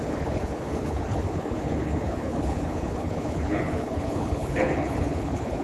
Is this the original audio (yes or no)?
no